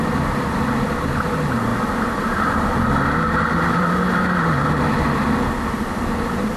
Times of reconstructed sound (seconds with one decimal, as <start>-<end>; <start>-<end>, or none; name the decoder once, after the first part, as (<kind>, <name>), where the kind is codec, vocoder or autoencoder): none